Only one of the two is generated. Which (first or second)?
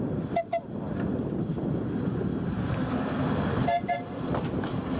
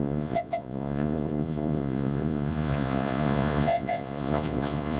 second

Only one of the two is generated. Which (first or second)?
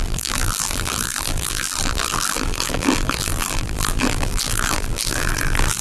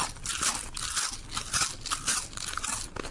first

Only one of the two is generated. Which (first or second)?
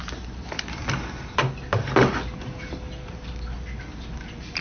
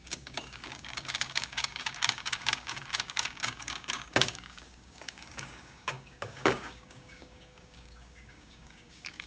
second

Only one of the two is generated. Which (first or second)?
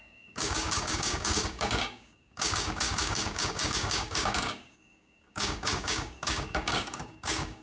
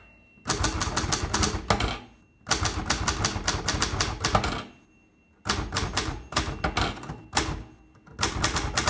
first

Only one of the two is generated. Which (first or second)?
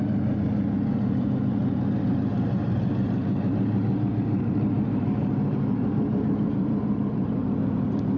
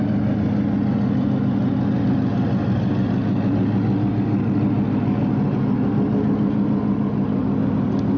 first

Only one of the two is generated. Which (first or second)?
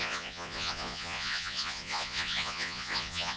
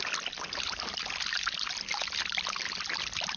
first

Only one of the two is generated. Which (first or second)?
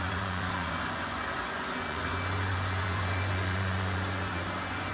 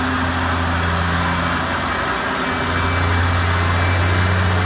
first